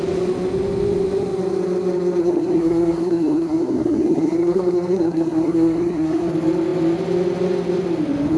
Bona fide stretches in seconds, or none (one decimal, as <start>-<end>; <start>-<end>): 0.0-2.2; 6.3-8.4